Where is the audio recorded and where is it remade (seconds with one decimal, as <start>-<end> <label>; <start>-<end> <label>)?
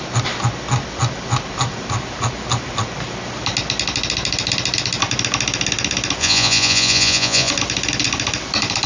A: 0.0-6.2 recorded; 6.2-7.5 remade; 7.5-8.9 recorded